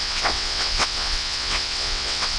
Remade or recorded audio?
remade